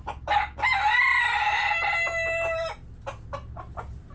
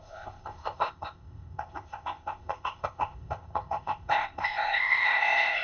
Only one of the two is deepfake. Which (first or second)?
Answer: second